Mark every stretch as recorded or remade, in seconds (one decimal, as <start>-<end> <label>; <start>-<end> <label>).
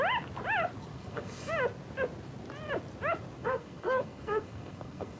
0.0-0.9 recorded; 0.9-1.5 remade; 1.5-3.4 recorded; 3.4-5.2 remade